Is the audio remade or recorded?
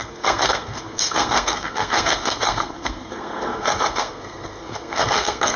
remade